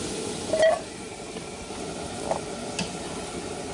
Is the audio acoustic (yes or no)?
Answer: yes